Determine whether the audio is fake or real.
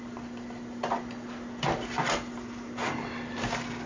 real